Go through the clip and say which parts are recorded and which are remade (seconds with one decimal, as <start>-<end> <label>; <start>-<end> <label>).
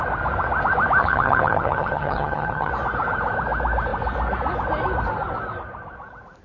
0.0-1.0 recorded; 1.0-2.7 remade; 2.7-6.4 recorded